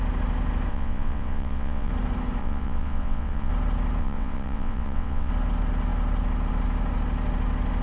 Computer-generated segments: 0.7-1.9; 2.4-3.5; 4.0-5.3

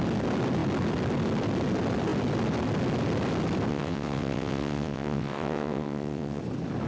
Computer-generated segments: 3.7-6.4

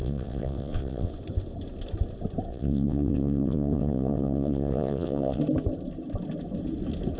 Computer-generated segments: 0.0-1.1; 2.5-5.4

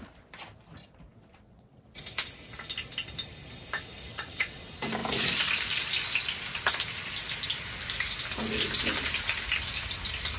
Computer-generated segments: 1.1-2.0; 4.1-4.6

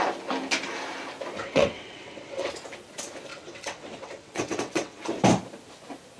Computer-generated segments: 1.4-2.5; 3.3-5.0

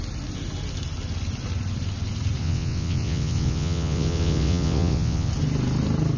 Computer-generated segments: 2.4-5.3